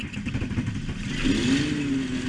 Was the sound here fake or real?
real